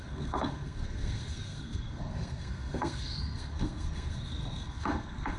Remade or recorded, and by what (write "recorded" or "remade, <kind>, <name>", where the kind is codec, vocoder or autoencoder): remade, codec, SNAC